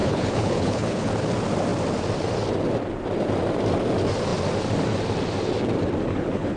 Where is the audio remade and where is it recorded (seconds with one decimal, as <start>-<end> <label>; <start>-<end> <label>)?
0.0-1.1 remade; 1.1-6.1 recorded; 6.1-6.6 remade